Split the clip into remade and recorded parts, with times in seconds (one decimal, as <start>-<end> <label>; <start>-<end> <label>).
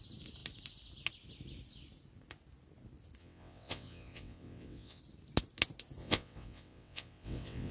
0.0-3.2 recorded; 3.2-5.0 remade; 5.0-6.0 recorded; 6.0-7.7 remade